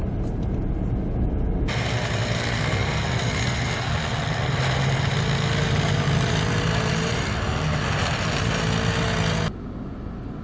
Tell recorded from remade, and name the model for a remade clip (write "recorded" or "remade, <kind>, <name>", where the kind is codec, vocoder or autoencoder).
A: recorded